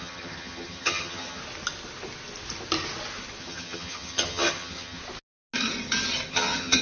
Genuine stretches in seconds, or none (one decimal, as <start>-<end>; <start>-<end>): 1.4-3.4; 5.0-6.3